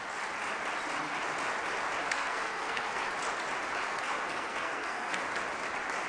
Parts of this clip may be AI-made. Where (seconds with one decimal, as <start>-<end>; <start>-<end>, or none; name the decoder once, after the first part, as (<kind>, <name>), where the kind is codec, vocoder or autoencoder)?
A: 2.0-3.1 (codec, SNAC); 3.9-5.2